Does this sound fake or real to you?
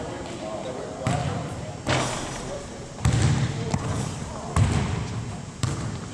fake